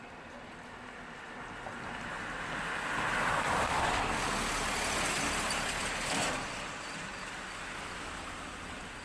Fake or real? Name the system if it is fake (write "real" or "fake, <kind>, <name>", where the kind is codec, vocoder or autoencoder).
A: real